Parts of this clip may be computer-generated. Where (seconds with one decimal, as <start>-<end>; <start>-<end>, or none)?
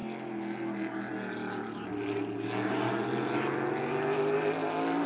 none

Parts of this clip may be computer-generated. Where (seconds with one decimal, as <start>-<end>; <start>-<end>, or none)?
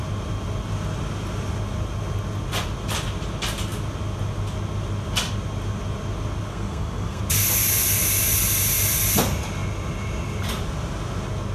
6.5-7.2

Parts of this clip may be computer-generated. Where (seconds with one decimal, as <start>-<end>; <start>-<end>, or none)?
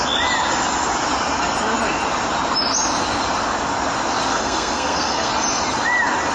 4.3-5.3